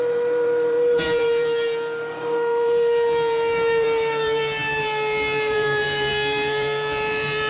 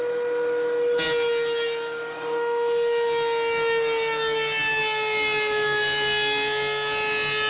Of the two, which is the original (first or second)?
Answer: second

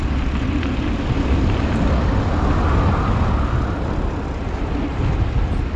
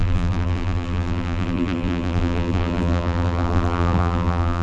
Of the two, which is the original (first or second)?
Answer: first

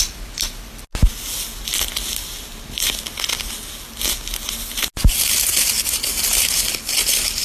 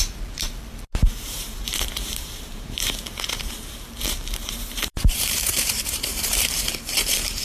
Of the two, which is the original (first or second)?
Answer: first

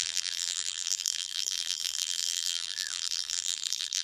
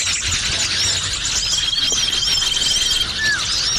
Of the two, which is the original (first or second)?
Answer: second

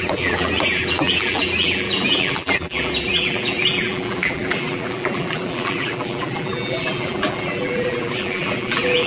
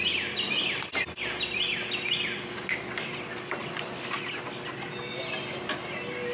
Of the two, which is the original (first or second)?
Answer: second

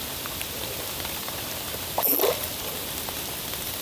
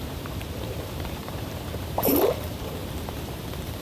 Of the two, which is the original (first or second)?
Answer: first